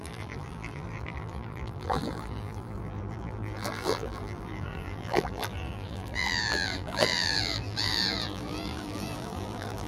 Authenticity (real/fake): fake